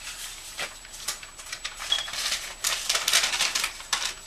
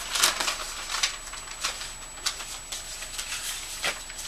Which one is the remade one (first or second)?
first